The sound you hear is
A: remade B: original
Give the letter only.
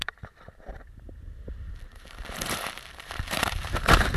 A